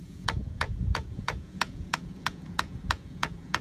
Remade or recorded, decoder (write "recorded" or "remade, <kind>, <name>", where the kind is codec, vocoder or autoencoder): remade, vocoder, Vocos